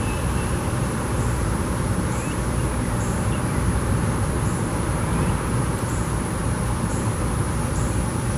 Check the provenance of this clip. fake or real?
fake